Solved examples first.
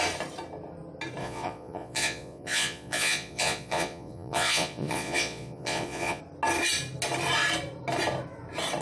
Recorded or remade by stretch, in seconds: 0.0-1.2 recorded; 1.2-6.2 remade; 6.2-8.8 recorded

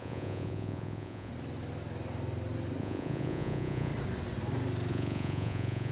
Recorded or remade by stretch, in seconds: 0.0-1.3 remade; 1.3-2.8 recorded; 2.8-3.9 remade; 3.9-4.9 recorded; 4.9-5.9 remade

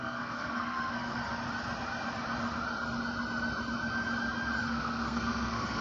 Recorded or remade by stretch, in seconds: 0.0-1.2 remade; 1.2-4.7 recorded; 4.7-5.8 remade

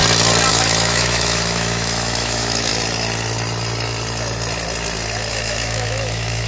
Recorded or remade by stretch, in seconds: 0.0-0.5 recorded; 0.5-2.7 remade; 2.7-5.3 recorded; 5.3-6.5 remade

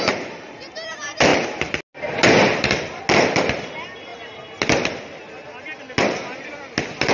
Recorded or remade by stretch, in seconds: 0.0-7.1 recorded